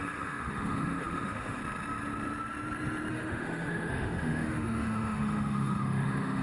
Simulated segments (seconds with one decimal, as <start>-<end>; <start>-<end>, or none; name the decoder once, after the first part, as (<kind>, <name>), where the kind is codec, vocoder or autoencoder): 0.0-1.6 (autoencoder, DAC-VAE); 3.1-6.4

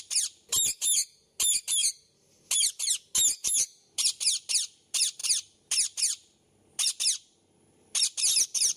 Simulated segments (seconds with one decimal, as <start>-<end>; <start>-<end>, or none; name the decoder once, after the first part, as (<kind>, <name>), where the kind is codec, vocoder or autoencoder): none

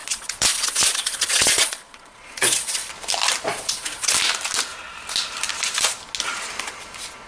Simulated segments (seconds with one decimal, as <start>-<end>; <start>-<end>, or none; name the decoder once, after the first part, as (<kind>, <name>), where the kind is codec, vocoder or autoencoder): 0.0-2.9 (vocoder, Vocos); 3.5-4.1

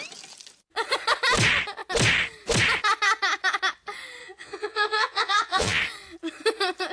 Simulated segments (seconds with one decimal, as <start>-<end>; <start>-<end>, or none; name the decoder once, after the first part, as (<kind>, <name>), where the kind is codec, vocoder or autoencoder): 4.2-5.8 (vocoder, Vocos)

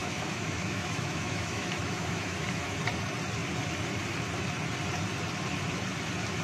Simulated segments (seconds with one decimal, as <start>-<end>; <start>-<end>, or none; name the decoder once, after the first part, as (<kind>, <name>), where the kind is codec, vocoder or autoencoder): 0.0-2.8 (autoencoder, DAC-VAE)

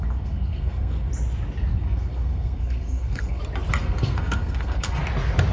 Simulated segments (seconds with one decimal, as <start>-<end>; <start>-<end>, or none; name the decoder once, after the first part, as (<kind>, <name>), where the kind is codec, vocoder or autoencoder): 0.0-1.1 (codec, SNAC); 1.7-3.4; 3.8-5.0

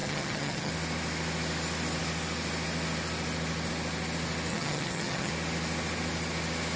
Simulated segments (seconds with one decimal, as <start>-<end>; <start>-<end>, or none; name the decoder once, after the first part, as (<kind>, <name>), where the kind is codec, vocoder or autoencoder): 0.0-0.7 (vocoder, HiFi-GAN); 4.5-5.3